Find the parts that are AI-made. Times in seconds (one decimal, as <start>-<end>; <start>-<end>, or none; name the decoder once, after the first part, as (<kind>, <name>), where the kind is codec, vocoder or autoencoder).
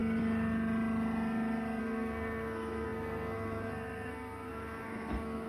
1.8-5.5 (codec, SNAC)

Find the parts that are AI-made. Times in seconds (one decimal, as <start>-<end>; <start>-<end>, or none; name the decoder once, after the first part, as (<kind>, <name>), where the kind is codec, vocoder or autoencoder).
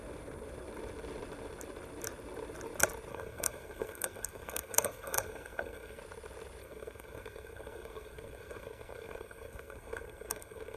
3.1-6.0 (codec, SNAC); 6.6-10.8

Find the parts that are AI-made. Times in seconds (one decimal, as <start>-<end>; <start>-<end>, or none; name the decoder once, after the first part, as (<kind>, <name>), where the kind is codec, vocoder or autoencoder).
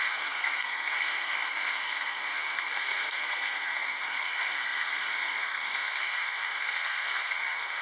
0.0-7.8 (codec, SNAC)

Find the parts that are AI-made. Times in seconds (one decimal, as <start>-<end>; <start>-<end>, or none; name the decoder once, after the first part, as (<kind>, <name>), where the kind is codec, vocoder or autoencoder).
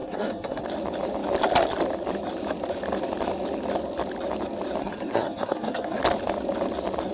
0.0-0.6 (codec, SNAC); 4.8-6.0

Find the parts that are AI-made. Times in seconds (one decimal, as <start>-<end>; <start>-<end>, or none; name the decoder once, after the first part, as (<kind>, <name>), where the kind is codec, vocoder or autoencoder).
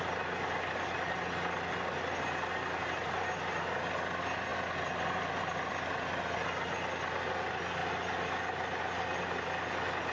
none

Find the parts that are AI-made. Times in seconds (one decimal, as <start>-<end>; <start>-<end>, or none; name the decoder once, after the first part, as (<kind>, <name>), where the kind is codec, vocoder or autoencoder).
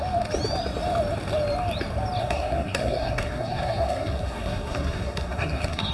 2.2-5.9 (codec, SNAC)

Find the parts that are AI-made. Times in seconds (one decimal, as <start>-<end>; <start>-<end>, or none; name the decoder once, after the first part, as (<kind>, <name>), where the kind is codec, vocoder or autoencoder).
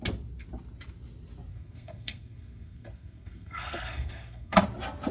1.5-4.6 (codec, SNAC)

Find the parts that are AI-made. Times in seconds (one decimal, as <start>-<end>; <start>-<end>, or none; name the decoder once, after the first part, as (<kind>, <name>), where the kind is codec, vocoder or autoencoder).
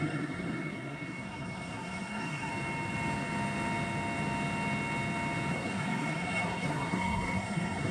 0.0-2.5 (codec, SNAC); 5.5-7.9